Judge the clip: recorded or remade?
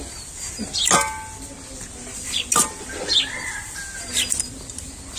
recorded